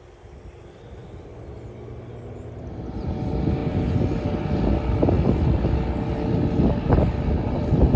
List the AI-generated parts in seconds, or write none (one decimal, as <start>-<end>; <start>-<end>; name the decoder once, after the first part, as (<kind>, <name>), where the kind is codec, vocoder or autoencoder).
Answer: none